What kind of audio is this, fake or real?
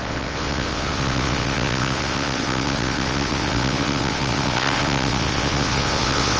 fake